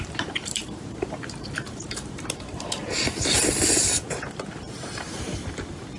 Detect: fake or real fake